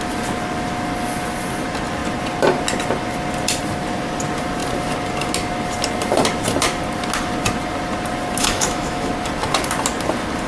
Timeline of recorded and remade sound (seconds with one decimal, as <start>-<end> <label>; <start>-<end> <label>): 0.0-8.4 recorded; 8.4-9.1 remade; 9.1-10.5 recorded